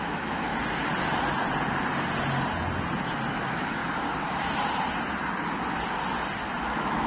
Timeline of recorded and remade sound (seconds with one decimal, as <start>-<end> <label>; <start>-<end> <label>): 0.0-0.5 remade; 0.5-3.3 recorded; 3.3-3.8 remade; 3.8-6.6 recorded; 6.6-7.1 remade